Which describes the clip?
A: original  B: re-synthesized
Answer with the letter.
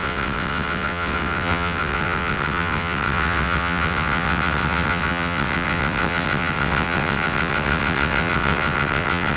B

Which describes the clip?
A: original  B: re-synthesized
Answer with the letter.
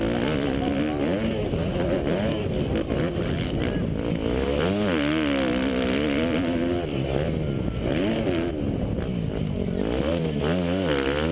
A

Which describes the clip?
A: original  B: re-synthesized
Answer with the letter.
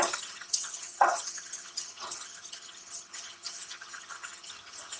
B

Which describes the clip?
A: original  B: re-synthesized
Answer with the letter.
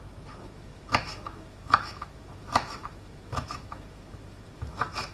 B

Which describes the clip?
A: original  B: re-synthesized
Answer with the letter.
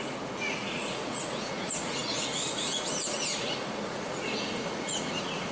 B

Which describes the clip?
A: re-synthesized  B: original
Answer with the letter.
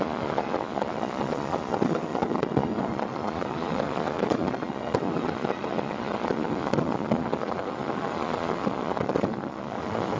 A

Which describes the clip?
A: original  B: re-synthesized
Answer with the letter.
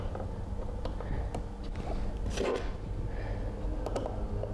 A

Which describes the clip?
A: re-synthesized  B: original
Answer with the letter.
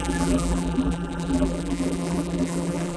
A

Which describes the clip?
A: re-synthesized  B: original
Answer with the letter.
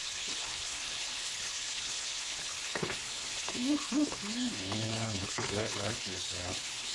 A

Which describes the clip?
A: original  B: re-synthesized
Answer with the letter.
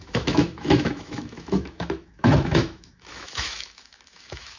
B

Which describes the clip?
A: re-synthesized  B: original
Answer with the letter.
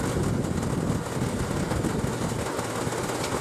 B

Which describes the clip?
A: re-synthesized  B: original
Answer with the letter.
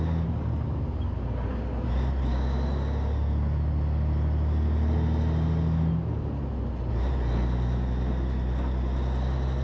B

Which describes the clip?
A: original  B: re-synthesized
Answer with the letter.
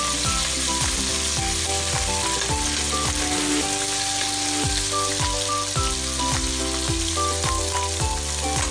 A